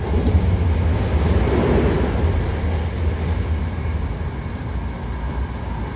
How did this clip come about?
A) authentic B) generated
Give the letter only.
A